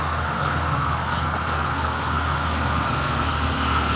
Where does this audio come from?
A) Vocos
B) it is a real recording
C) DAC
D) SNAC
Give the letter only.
D